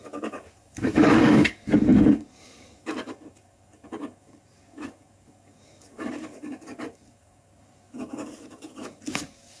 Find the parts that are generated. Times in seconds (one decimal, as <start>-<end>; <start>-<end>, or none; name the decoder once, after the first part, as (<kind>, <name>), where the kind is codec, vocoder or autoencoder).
0.0-9.6 (codec, DAC)